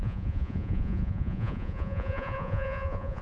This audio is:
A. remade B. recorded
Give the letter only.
A